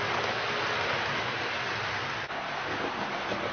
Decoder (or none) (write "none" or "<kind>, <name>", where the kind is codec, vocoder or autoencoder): none